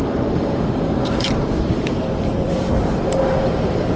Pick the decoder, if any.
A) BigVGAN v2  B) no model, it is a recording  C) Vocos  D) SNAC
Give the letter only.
A